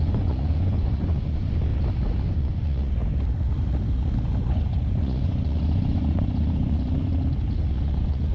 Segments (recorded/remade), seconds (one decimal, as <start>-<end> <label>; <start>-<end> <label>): 0.0-1.7 remade; 1.7-2.3 recorded; 2.3-3.0 remade; 3.0-4.4 recorded; 4.4-7.1 remade; 7.1-7.7 recorded; 7.7-8.3 remade